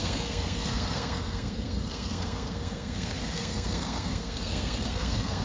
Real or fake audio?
fake